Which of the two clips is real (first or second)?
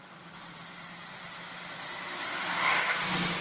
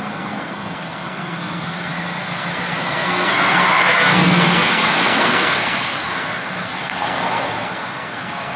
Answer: first